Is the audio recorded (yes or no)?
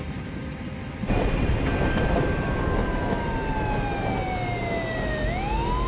yes